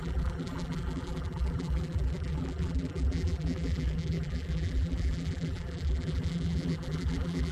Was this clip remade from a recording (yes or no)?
yes